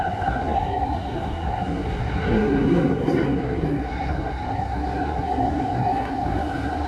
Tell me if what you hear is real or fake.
fake